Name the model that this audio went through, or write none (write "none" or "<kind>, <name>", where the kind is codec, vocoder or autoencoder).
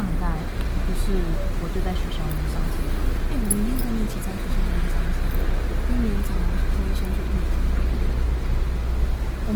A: none